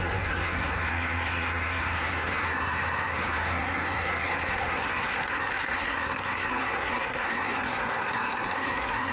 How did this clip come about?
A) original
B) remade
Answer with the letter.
B